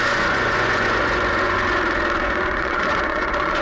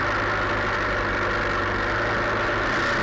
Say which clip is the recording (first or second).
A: second